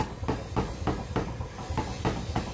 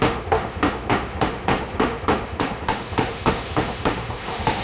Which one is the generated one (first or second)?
second